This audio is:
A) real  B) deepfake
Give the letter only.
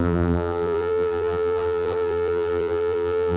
B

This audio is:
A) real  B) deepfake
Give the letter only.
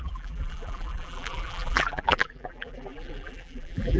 B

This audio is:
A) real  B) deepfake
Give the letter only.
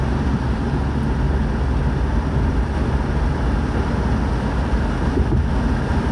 A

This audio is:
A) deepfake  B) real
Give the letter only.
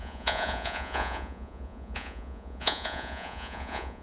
A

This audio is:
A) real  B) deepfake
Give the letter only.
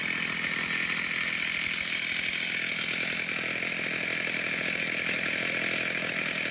A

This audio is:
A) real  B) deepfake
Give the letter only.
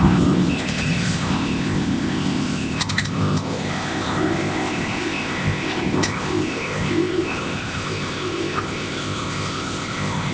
B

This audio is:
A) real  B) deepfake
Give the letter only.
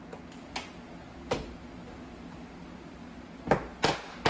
A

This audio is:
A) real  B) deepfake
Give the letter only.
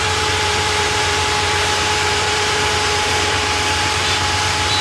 B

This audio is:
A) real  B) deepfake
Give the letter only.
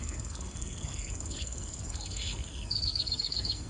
B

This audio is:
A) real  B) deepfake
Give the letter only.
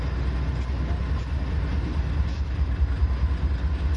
A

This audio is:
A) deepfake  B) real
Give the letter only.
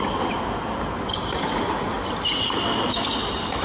B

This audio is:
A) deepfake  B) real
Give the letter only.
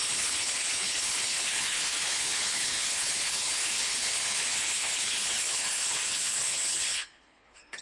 A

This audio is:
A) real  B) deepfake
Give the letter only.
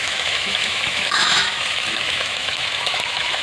B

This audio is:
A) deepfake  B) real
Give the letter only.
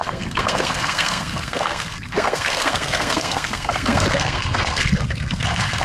A